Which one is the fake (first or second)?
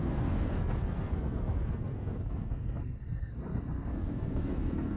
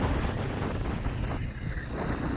first